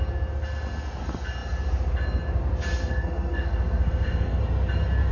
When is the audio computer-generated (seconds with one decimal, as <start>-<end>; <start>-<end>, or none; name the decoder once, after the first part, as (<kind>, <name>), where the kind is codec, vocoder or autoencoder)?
2.8-4.4 (codec, SNAC)